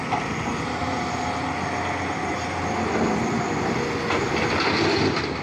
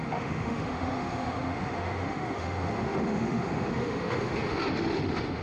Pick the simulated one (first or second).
second